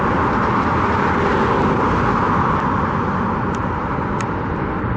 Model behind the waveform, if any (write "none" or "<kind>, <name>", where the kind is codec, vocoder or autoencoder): none